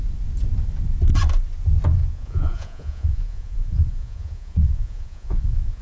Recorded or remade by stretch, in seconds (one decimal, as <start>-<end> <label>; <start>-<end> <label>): 0.0-2.0 recorded; 2.0-5.8 remade